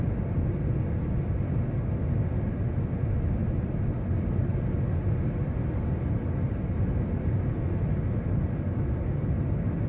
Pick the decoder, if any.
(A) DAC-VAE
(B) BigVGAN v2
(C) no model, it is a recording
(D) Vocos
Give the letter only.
C